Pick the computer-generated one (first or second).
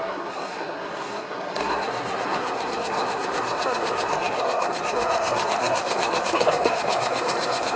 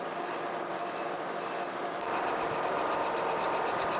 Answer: first